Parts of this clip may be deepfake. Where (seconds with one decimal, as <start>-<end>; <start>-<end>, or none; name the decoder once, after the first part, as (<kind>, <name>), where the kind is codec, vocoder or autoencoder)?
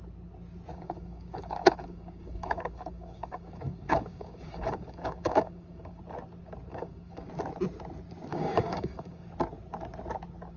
0.7-6.0 (codec, DAC); 6.7-7.3; 8.3-9.3